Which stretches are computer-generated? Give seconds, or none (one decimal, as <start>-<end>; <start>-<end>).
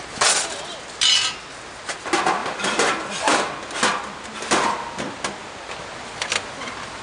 none